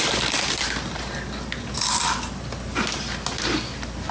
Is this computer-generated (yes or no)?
no